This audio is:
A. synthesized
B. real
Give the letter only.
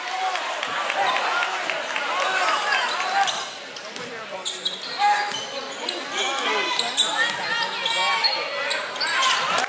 B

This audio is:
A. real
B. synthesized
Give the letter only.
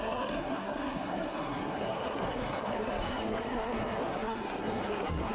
B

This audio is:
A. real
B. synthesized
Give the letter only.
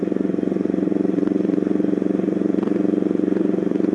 B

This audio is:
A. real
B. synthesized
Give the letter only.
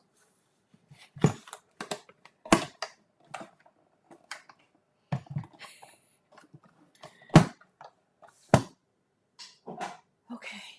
A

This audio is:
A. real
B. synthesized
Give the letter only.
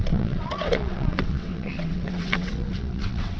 B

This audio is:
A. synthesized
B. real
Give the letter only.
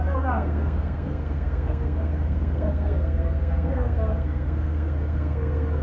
A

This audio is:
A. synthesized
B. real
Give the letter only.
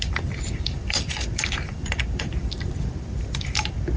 A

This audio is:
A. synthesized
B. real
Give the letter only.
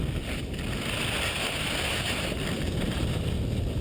B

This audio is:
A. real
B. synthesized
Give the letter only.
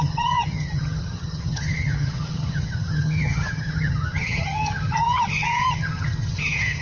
B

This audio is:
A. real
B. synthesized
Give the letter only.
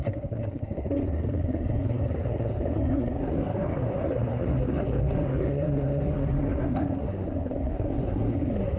B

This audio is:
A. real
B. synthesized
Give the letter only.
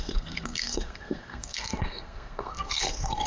B